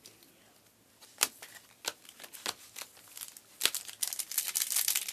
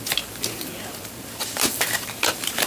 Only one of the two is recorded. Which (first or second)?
first